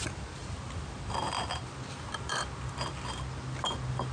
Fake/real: fake